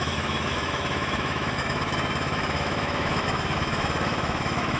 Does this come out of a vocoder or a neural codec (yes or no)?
yes